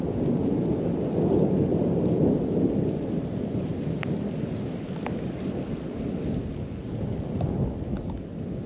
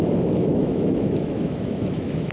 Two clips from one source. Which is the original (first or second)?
first